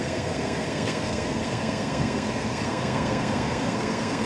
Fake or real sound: fake